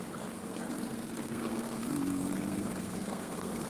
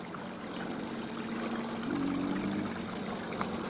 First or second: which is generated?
first